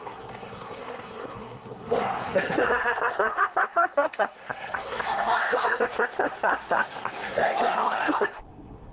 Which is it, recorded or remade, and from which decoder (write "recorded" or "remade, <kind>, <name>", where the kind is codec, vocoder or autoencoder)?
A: remade, codec, SNAC